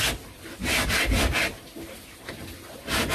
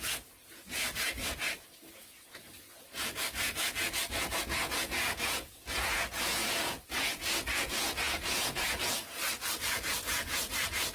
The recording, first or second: first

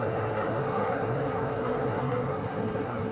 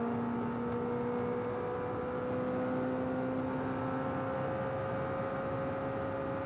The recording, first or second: second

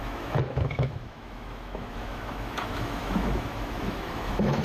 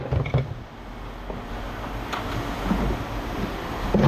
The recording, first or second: second